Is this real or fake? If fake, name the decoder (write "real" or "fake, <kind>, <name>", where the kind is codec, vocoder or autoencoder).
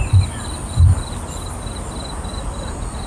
real